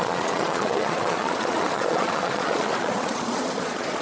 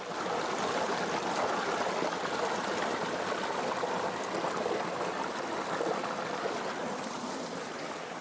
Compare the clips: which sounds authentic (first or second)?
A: second